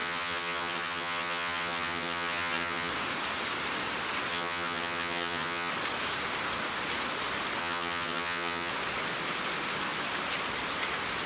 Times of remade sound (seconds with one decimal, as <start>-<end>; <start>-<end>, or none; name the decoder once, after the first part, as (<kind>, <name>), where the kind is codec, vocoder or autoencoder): 0.0-2.9 (vocoder, HiFi-GAN); 4.3-5.7; 7.6-8.7